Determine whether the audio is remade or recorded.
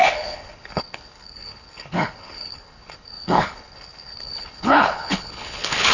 remade